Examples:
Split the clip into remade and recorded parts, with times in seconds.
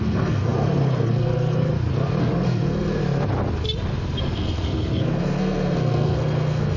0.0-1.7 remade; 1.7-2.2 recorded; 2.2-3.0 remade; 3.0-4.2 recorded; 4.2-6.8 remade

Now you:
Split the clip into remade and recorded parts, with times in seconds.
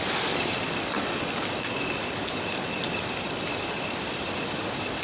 0.0-2.2 remade; 2.2-2.8 recorded; 2.8-5.0 remade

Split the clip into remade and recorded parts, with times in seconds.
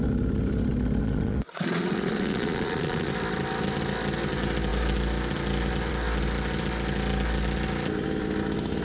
0.0-1.0 recorded; 1.0-3.1 remade; 3.1-8.8 recorded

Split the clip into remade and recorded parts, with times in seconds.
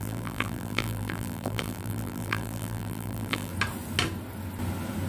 0.0-3.5 remade; 3.5-5.1 recorded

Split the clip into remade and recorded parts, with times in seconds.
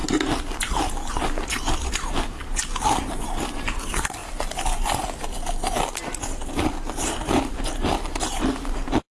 0.0-1.2 recorded; 1.2-4.2 remade; 4.2-7.5 recorded; 7.5-9.1 remade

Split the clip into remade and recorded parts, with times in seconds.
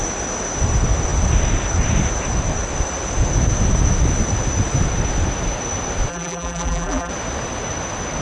0.0-6.1 recorded; 6.1-7.1 remade; 7.1-8.2 recorded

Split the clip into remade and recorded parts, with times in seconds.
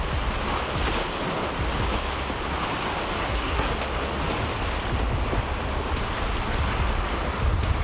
0.0-3.2 recorded; 3.2-3.7 remade; 3.7-7.8 recorded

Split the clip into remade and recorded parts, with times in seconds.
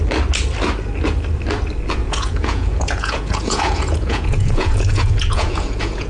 0.0-2.0 recorded; 2.0-6.1 remade